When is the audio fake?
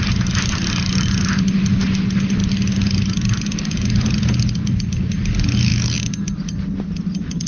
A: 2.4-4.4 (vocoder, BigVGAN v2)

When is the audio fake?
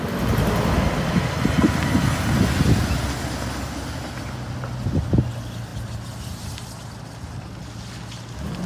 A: none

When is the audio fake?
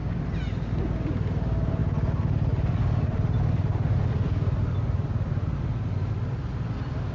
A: none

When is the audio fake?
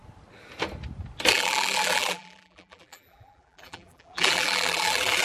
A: 1.3-5.2 (vocoder, BigVGAN v2)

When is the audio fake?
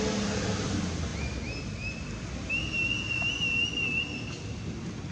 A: none